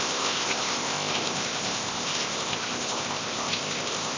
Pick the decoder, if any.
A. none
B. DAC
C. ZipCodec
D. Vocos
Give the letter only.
C